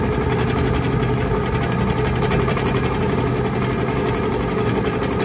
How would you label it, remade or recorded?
recorded